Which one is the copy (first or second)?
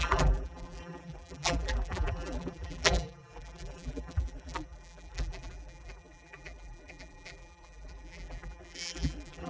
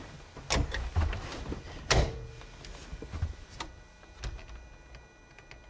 first